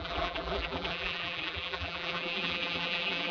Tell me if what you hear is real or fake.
fake